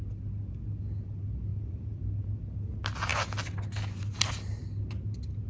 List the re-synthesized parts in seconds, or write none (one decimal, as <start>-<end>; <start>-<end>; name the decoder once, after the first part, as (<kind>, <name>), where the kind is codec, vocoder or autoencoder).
1.5-2.0 (vocoder, BigVGAN v2)